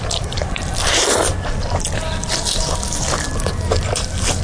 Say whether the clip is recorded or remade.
remade